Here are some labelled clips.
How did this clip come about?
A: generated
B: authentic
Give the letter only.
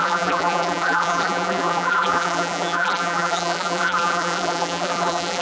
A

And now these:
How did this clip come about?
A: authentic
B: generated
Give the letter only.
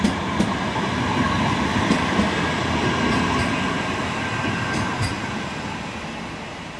A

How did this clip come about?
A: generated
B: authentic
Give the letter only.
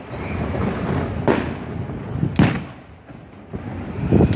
B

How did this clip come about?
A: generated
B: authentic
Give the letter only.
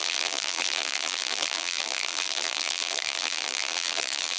A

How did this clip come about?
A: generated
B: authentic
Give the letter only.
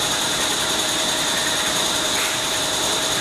A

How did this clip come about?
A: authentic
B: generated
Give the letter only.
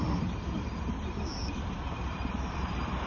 B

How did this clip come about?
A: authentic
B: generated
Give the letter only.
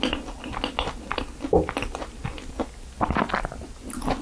A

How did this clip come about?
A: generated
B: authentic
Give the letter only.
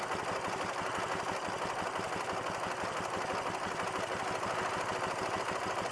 B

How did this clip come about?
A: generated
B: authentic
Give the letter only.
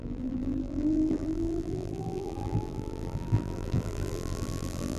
A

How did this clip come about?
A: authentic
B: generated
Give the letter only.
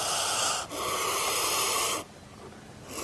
A